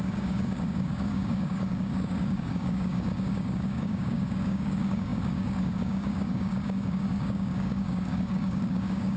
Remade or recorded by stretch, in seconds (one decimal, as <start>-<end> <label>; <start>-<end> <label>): 0.0-9.2 remade